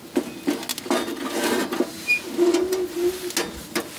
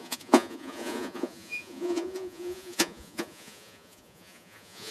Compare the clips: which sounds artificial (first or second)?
second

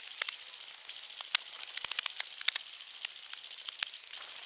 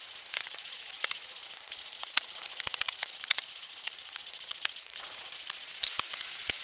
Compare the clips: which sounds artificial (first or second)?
second